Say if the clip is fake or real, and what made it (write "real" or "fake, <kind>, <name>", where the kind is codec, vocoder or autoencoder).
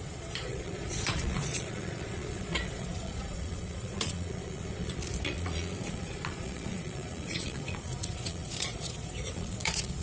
fake, vocoder, Vocos